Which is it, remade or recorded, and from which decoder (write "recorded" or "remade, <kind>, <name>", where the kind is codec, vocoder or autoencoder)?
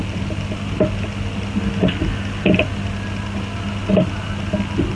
recorded